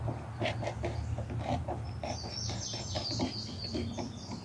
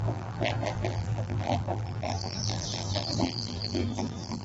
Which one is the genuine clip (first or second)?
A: first